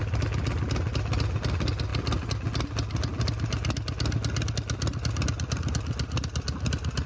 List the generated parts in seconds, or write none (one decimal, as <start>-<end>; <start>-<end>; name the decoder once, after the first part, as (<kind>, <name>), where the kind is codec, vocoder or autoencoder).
none